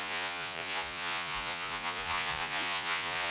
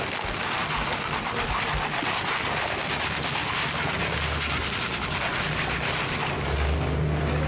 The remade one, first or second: first